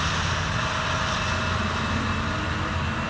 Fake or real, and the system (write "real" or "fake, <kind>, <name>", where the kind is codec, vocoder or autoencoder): real